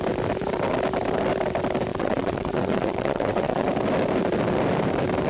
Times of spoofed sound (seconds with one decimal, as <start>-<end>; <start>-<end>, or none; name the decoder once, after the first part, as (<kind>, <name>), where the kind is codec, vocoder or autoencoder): 1.9-3.7 (vocoder, WaveNeXt)